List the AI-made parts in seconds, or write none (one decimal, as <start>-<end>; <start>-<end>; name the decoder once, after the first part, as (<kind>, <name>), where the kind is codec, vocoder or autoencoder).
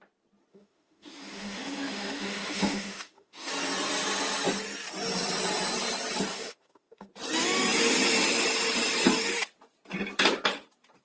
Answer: 0.5-3.5 (autoencoder, DAC-VAE); 6.3-7.1